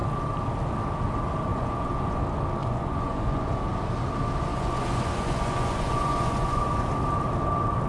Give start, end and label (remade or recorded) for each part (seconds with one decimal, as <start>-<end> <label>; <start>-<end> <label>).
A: 0.0-1.5 recorded; 1.5-2.2 remade; 2.2-2.6 recorded; 2.6-3.6 remade; 3.6-4.5 recorded; 4.5-6.8 remade; 6.8-7.9 recorded